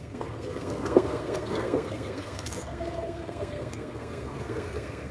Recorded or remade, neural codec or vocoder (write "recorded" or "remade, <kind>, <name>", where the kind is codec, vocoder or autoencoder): remade, codec, SNAC